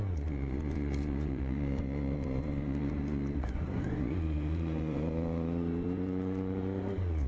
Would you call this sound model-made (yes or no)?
yes